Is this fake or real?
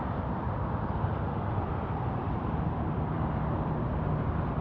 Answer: fake